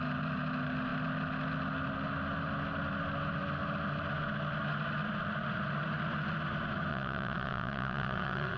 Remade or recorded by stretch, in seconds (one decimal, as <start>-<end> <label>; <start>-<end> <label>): 0.0-6.9 recorded; 6.9-8.6 remade